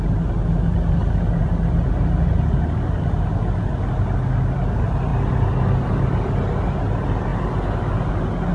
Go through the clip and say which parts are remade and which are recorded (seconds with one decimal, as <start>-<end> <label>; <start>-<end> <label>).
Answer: 0.0-8.5 recorded